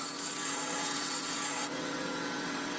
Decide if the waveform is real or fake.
fake